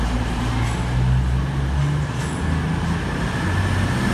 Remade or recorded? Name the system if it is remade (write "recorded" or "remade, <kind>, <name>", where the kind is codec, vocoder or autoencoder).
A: recorded